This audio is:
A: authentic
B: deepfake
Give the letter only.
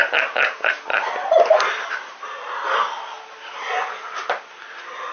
A